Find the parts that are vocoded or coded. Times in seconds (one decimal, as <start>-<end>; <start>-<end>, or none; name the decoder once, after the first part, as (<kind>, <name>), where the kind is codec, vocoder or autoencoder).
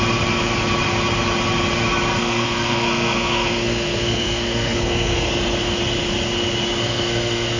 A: 2.2-5.3 (codec, SNAC); 6.8-7.6